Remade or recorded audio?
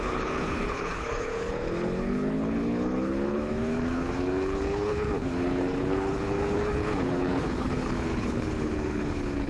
remade